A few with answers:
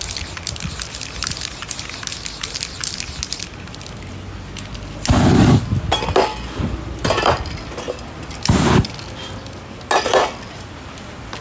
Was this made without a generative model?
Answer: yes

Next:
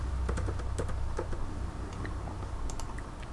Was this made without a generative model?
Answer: yes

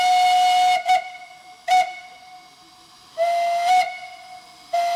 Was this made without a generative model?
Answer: yes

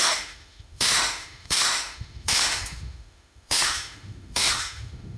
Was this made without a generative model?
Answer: no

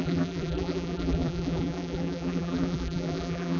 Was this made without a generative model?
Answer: no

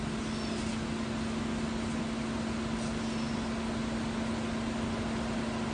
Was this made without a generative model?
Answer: yes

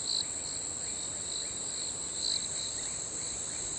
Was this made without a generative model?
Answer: yes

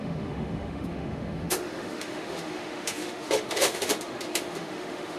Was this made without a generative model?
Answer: no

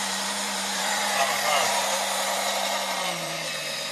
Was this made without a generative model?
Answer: no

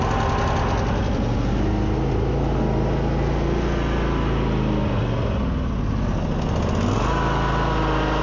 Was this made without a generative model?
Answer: yes